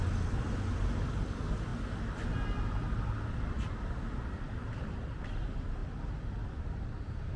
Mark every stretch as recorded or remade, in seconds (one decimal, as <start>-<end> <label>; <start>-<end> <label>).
0.0-7.4 recorded